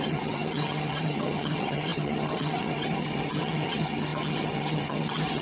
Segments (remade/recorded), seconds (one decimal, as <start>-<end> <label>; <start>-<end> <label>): 0.0-5.4 remade